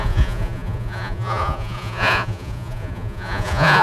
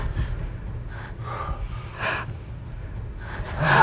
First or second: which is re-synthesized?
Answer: first